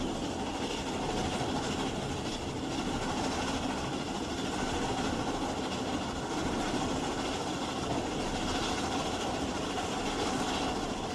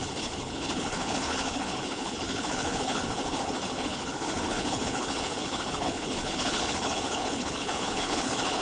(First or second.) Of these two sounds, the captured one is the first